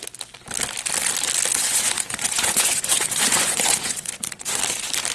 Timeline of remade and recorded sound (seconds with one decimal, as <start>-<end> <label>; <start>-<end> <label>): 0.0-1.5 recorded; 1.5-4.6 remade; 4.6-5.1 recorded